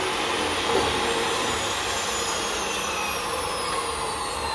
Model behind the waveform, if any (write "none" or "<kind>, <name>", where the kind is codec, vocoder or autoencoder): none